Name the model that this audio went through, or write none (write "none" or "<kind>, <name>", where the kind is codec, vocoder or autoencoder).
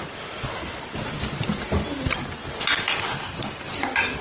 none